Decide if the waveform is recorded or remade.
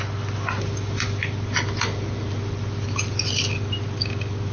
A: recorded